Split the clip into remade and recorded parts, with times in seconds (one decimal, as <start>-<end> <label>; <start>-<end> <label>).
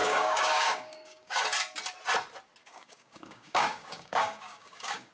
0.0-1.4 remade; 1.4-2.6 recorded; 2.6-5.1 remade